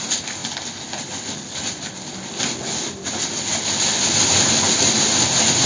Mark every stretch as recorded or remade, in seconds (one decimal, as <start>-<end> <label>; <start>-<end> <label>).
0.0-5.7 recorded